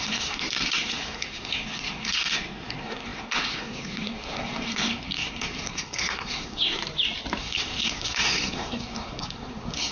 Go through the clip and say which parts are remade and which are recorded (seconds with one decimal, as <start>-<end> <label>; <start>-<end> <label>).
0.0-6.8 remade; 6.8-7.4 recorded; 7.4-9.9 remade